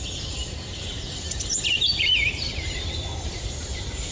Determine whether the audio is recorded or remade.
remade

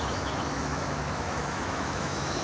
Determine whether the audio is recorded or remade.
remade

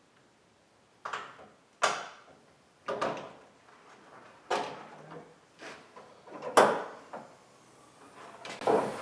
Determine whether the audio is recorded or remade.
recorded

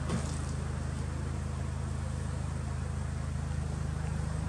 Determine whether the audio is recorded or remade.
recorded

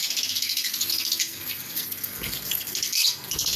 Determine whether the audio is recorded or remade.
remade